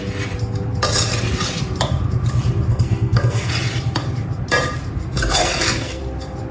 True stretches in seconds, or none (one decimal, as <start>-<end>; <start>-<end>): 0.0-2.7; 3.5-5.4; 6.0-6.5